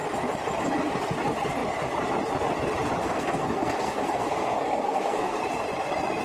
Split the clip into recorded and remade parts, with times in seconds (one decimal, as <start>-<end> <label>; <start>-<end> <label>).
0.0-3.0 recorded; 3.0-5.4 remade; 5.4-6.2 recorded